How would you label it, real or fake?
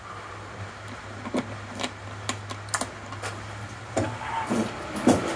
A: real